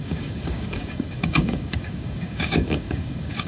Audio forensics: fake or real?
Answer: fake